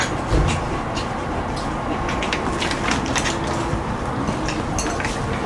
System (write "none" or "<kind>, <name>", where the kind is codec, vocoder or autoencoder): none